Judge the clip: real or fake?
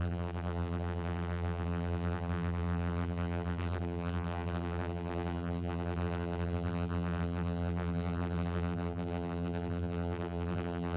fake